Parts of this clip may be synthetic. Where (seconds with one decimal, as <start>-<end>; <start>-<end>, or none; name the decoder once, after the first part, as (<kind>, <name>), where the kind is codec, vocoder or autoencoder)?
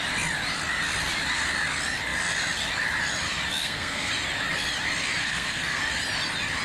3.6-4.1 (codec, SNAC); 5.2-5.8